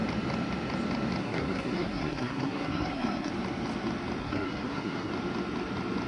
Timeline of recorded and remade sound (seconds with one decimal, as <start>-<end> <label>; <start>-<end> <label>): 0.0-1.2 recorded; 1.2-3.3 remade; 3.3-4.2 recorded; 4.2-5.1 remade; 5.1-6.1 recorded